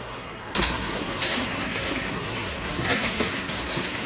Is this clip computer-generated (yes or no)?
yes